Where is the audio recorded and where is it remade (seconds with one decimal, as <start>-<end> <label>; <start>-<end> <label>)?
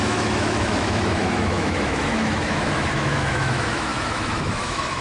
0.0-5.0 remade